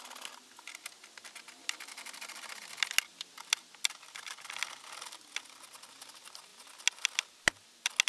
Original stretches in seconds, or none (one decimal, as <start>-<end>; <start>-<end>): 0.0-8.1